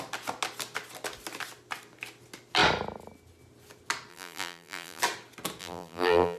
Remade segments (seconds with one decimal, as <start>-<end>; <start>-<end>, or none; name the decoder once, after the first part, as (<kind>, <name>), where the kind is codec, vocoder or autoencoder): 4.1-5.0 (vocoder, BigVGAN v2); 5.6-6.4